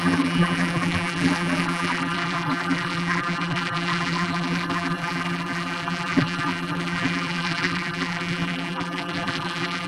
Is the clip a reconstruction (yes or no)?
yes